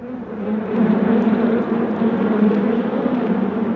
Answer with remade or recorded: remade